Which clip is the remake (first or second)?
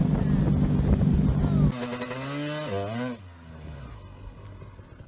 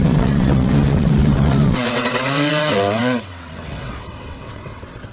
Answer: second